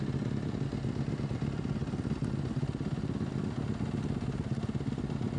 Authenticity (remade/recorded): recorded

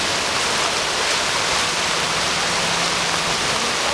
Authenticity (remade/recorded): recorded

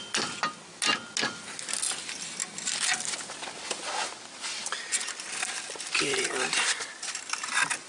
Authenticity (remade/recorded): recorded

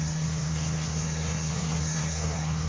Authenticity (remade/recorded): remade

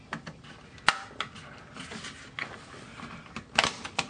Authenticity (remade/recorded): recorded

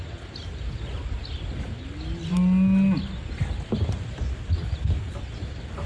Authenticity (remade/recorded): recorded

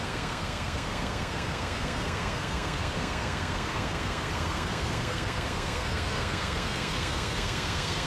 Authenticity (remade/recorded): remade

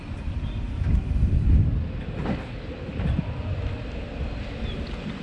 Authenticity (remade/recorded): recorded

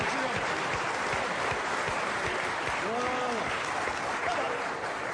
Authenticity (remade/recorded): recorded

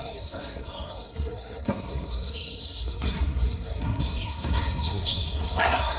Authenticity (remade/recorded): remade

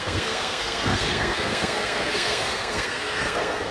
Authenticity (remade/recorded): remade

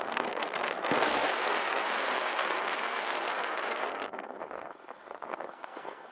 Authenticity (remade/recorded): remade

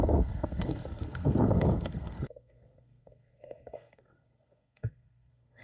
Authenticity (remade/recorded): remade